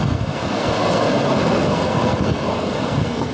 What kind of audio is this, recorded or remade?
remade